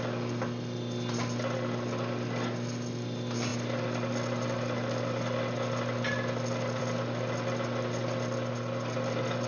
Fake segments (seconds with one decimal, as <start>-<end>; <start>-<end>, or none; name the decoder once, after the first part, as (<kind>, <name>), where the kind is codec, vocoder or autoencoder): none